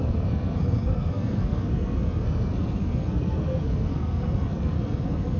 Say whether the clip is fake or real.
fake